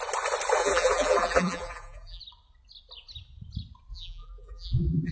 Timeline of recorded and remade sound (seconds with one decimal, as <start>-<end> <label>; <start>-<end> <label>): 0.0-0.6 recorded; 0.6-2.2 remade; 2.2-3.9 recorded; 3.9-5.1 remade